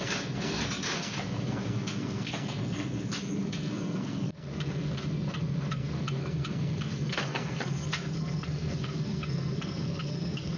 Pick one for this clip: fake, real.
fake